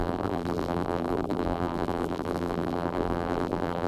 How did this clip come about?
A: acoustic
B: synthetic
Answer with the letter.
B